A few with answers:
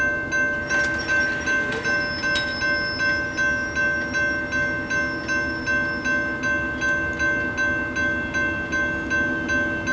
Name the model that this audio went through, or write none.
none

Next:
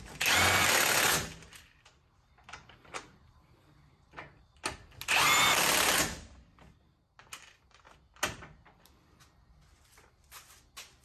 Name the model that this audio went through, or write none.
none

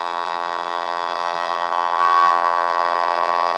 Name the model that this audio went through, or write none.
vocoder, BigVGAN v2